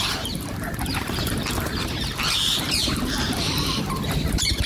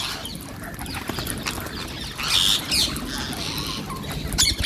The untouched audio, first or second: second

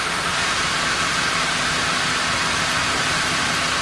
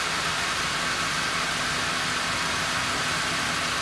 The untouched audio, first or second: second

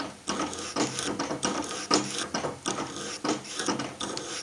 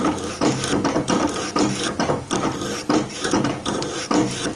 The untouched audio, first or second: first